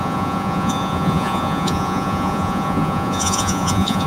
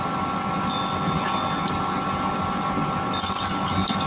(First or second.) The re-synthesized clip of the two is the first